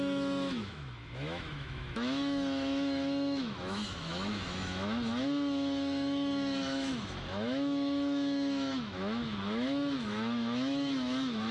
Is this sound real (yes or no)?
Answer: no